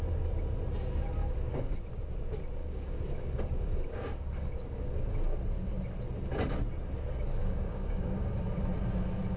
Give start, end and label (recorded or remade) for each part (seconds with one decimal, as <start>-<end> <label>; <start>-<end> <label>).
0.0-1.2 recorded; 1.2-1.8 remade; 1.8-2.6 recorded; 2.6-5.0 remade; 5.0-7.4 recorded; 7.4-8.3 remade; 8.3-9.4 recorded